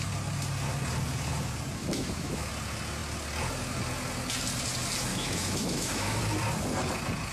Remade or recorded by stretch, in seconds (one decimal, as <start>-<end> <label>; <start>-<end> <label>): 0.0-1.8 recorded; 1.8-2.5 remade; 2.5-5.1 recorded; 5.1-6.2 remade; 6.2-7.3 recorded